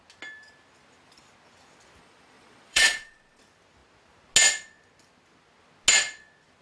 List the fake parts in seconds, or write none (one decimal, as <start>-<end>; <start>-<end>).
2.0-3.4